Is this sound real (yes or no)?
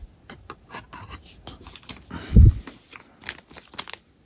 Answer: yes